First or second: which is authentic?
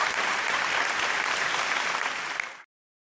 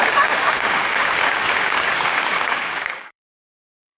first